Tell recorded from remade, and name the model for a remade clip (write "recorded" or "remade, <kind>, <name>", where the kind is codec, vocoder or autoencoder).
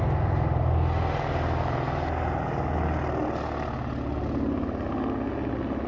recorded